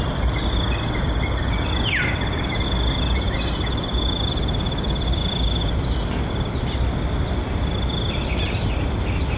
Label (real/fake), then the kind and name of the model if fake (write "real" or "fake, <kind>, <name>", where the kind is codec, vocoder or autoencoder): real